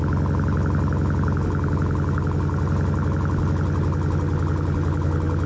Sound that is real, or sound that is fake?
real